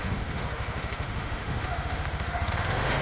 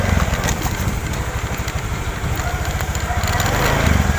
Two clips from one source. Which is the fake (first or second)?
first